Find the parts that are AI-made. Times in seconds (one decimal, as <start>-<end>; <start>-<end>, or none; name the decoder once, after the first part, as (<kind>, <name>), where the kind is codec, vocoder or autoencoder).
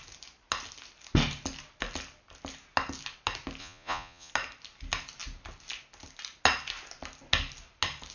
3.6-4.3 (vocoder, Vocos)